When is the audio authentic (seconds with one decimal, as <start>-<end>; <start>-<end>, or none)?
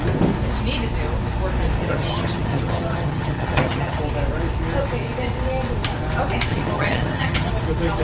0.0-1.8; 4.0-6.5; 7.5-8.0